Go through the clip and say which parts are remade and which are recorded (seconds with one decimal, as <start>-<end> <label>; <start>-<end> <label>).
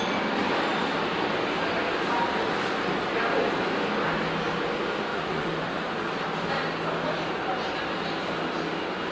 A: 0.0-5.1 recorded; 5.1-5.9 remade; 5.9-9.1 recorded